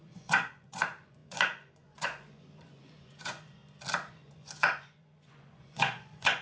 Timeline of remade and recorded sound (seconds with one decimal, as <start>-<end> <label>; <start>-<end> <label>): 0.0-3.6 remade; 3.6-4.1 recorded; 4.1-6.4 remade